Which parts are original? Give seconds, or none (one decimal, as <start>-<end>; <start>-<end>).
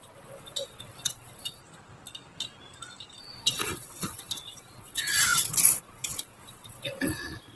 1.6-3.2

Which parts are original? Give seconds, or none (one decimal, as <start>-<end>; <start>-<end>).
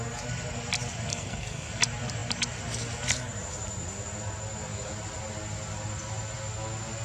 0.0-1.1; 1.7-7.0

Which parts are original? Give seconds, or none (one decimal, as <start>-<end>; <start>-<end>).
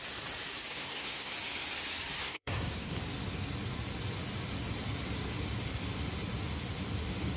0.0-0.7; 1.3-2.2; 3.0-7.4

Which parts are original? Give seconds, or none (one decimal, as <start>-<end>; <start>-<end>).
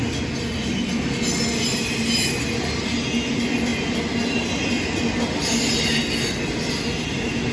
0.0-7.5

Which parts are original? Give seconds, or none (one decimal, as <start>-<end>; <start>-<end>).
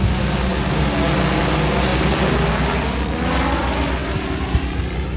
0.0-4.0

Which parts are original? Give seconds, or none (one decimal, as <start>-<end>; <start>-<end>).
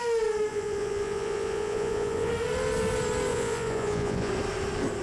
0.0-0.5; 2.3-3.3; 4.3-5.0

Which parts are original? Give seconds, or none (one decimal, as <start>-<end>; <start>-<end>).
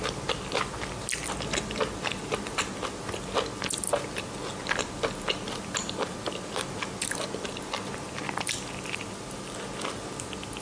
0.0-10.6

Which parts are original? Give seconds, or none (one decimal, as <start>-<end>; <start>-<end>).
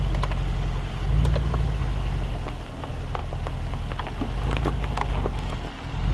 0.0-6.1